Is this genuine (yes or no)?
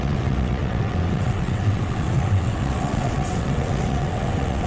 no